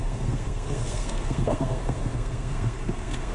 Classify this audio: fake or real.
fake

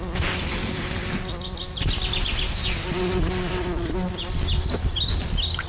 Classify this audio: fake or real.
real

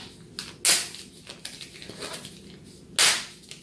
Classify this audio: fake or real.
real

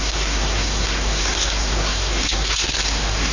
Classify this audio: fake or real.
fake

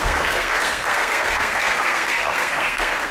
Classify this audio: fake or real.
fake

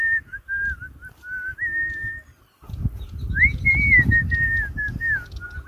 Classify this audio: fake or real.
real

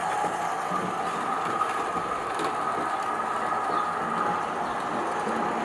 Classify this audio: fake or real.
real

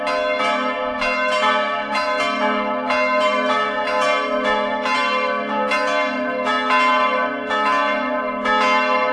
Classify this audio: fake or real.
real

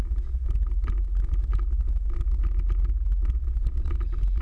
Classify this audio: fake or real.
real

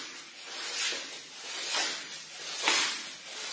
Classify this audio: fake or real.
real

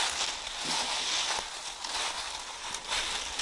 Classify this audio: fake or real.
real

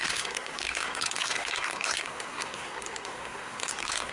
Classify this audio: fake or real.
fake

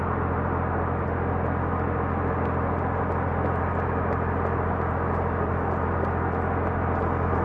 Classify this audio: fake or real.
real